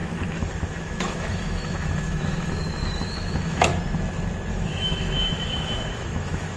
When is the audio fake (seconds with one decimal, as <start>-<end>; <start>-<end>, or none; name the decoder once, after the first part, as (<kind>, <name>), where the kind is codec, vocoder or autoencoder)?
0.0-3.7 (autoencoder, DAC-VAE); 4.5-6.6